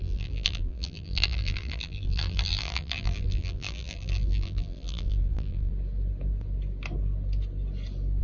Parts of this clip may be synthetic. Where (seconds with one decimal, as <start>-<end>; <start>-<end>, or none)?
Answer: 0.0-5.7